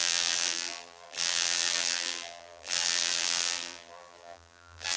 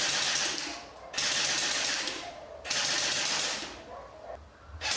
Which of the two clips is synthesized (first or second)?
first